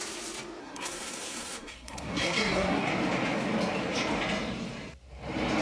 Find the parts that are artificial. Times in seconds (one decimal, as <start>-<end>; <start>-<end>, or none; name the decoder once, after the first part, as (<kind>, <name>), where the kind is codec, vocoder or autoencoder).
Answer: 0.6-2.9 (codec, SNAC)